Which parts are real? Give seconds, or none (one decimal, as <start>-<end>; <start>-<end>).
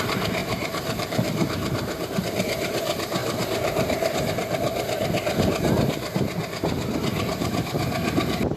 0.0-0.4; 2.2-3.2; 4.3-8.6